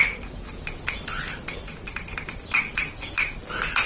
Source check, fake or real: real